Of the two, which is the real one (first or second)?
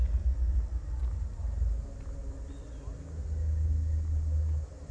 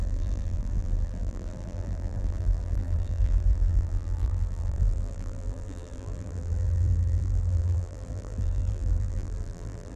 first